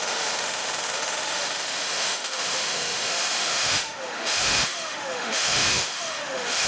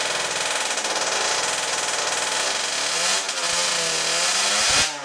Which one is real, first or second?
second